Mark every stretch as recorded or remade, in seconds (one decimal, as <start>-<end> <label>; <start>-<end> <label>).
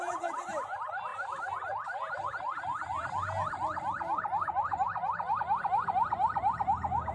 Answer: 0.0-7.1 recorded